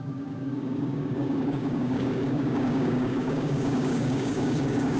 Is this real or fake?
fake